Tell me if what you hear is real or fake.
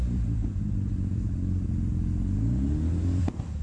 real